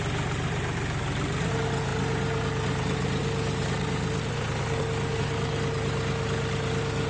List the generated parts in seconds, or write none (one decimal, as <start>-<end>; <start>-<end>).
none